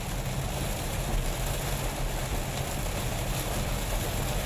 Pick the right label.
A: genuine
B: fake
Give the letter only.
A